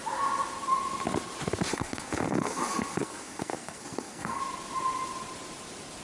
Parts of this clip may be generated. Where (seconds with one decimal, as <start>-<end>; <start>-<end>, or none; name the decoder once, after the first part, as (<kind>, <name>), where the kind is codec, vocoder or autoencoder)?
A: 1.7-4.4 (codec, SNAC)